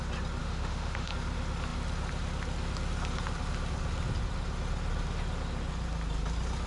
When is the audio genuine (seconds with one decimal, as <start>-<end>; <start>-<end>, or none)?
0.0-0.4; 1.1-6.7